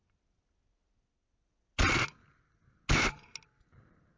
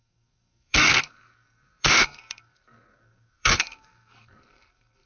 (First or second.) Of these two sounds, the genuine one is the first